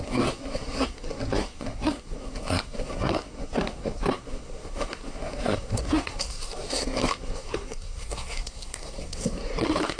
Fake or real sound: fake